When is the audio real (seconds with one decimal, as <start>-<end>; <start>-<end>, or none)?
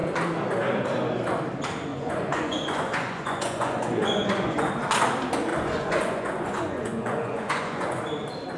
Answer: 0.0-1.9; 4.7-5.5; 8.0-8.6